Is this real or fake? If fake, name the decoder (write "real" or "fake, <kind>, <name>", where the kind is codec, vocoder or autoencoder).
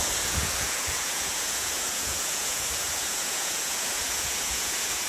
fake, vocoder, Vocos